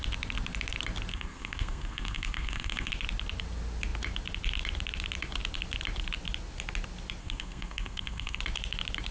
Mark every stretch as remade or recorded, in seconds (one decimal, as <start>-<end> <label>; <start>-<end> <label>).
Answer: 0.0-1.1 recorded; 1.1-2.9 remade; 2.9-7.2 recorded; 7.2-8.4 remade; 8.4-9.1 recorded